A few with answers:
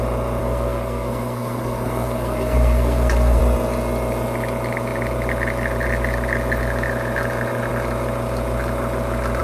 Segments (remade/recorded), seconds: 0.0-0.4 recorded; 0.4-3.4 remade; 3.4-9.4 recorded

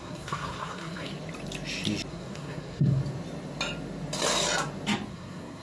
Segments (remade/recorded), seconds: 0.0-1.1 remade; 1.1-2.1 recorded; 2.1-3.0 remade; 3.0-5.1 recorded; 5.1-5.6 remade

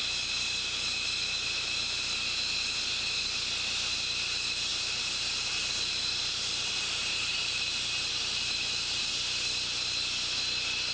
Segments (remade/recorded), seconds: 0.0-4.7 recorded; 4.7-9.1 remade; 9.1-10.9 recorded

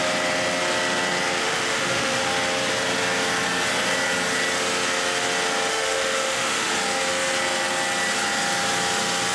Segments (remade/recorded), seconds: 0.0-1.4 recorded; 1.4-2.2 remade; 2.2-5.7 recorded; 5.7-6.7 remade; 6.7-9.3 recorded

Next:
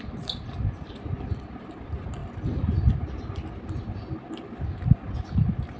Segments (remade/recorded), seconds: 0.0-5.8 recorded